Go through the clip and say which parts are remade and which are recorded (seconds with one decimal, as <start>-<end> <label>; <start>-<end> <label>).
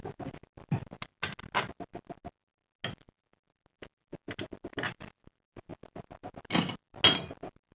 0.0-7.7 recorded